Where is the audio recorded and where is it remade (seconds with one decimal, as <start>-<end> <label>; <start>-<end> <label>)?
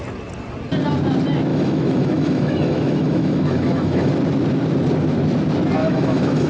0.0-1.5 recorded; 1.5-4.1 remade; 4.1-5.8 recorded; 5.8-6.5 remade